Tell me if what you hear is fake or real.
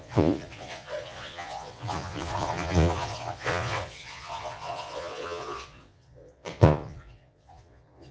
fake